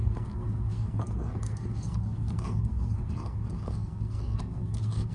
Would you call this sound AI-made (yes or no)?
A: yes